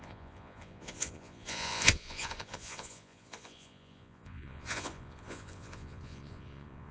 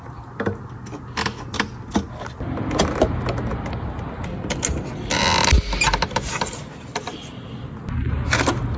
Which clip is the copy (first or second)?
first